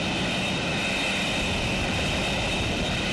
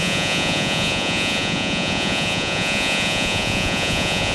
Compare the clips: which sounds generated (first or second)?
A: second